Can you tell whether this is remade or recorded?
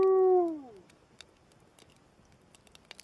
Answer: recorded